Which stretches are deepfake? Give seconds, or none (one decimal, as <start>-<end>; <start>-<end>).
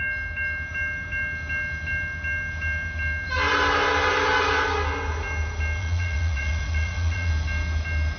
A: 5.8-7.3